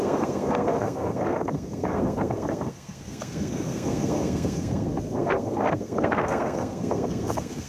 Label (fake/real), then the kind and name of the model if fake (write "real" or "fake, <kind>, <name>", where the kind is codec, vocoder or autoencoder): fake, codec, SNAC